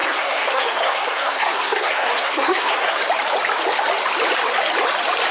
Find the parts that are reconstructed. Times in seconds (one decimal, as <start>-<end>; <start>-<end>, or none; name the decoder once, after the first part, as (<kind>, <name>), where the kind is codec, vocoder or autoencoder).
0.0-3.0 (codec, SNAC)